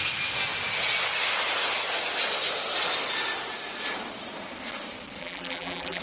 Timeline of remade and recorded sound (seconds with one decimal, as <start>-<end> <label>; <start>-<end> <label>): 0.0-5.2 recorded; 5.2-6.0 remade